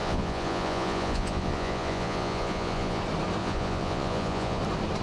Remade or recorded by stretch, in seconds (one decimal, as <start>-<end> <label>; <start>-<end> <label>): 0.0-3.0 remade; 3.0-3.4 recorded; 3.4-4.6 remade; 4.6-5.0 recorded